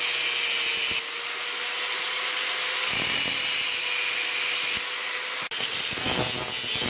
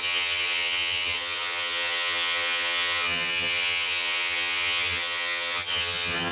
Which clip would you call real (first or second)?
first